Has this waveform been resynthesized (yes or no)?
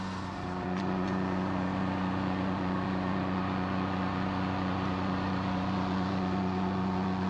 yes